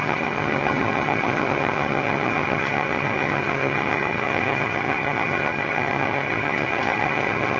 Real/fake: fake